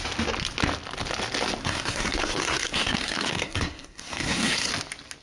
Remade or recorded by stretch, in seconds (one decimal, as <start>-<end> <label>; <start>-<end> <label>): 0.0-1.6 recorded; 1.6-4.7 remade; 4.7-5.2 recorded